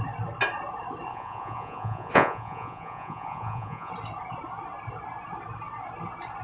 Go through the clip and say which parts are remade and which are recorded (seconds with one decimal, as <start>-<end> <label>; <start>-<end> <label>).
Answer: 0.0-1.1 recorded; 1.1-3.9 remade; 3.9-6.4 recorded